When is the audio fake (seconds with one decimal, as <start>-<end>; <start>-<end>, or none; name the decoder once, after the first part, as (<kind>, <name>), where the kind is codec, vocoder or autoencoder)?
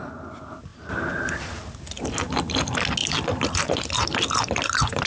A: 3.0-5.1 (vocoder, BigVGAN v2)